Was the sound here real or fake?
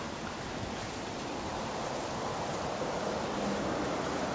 real